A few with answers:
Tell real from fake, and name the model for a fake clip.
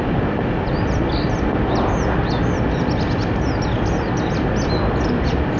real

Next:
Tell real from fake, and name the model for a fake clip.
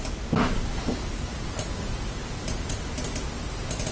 real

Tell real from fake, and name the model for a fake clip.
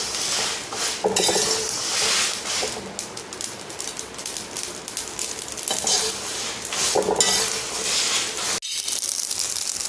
real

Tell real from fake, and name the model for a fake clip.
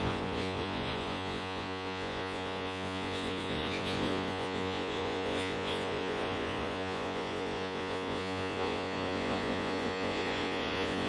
fake, vocoder, Vocos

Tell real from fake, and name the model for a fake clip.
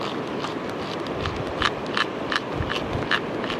real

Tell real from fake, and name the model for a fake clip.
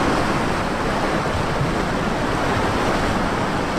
real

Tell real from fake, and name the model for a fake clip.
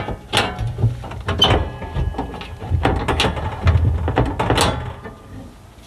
real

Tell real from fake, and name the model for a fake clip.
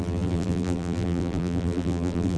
fake, vocoder, BigVGAN v2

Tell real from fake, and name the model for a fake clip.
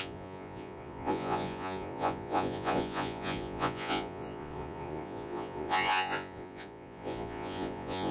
fake, vocoder, Vocos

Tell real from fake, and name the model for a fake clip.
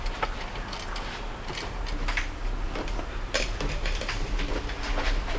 real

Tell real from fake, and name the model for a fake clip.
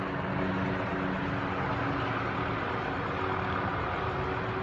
real